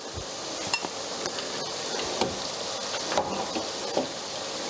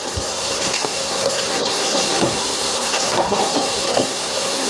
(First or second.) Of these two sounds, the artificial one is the second